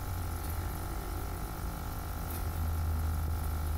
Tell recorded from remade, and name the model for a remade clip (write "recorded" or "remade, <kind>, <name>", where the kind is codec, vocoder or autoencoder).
recorded